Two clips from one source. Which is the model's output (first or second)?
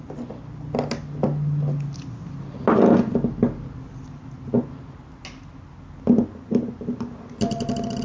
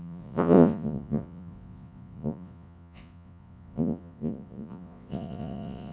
second